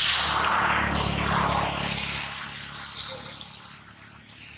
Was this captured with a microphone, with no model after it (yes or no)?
yes